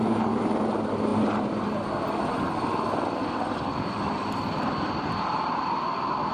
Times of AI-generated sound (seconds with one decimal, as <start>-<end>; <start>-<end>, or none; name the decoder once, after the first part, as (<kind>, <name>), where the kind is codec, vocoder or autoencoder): none